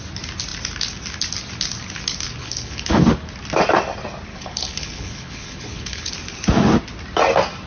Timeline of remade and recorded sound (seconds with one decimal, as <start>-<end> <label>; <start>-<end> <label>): 0.0-2.4 recorded; 2.4-3.0 remade; 3.0-4.3 recorded; 4.3-6.1 remade; 6.1-7.7 recorded